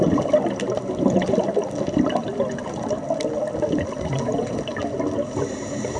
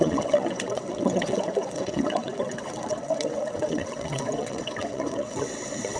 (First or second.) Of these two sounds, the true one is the first